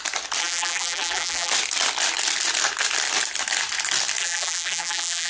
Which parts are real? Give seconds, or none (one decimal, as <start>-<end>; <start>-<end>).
0.0-0.4; 1.5-4.2

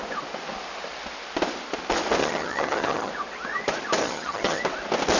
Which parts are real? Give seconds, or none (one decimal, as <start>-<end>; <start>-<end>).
0.0-2.2; 3.1-4.0; 4.6-5.2

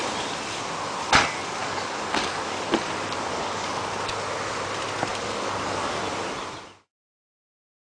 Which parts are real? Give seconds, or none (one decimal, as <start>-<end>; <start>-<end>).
0.0-1.6; 2.7-3.3; 3.9-5.1; 6.0-7.8

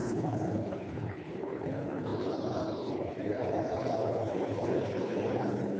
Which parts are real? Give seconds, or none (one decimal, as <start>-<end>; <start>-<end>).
none

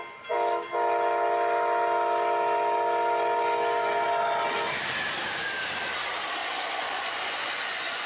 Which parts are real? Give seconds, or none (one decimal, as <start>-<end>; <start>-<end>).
0.0-6.4

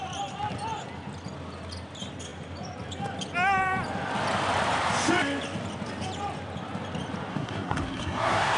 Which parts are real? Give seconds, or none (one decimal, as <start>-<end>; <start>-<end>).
0.0-7.3

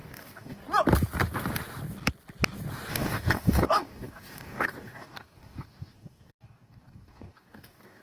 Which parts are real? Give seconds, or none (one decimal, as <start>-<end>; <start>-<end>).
0.6-2.9